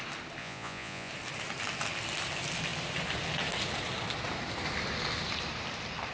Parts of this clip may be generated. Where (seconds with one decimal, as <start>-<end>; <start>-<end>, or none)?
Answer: 0.4-1.1

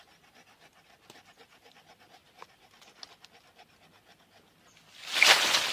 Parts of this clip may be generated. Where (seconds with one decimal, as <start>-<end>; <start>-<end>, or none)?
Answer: none